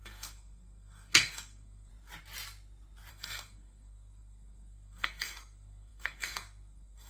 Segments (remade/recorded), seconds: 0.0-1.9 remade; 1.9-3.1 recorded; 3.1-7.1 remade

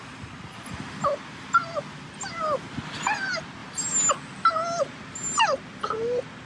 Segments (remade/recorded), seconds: 0.0-6.5 recorded

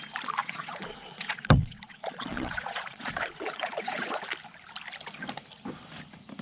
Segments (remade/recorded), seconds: 0.0-0.4 recorded; 0.4-4.2 remade; 4.2-6.4 recorded

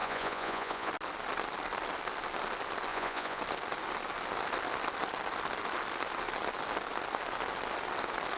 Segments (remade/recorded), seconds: 0.0-0.9 remade; 0.9-2.9 recorded; 2.9-3.4 remade; 3.4-8.4 recorded